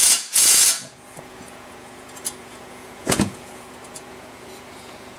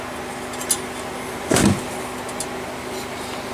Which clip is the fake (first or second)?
first